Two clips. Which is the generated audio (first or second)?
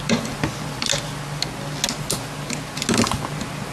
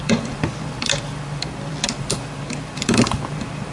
second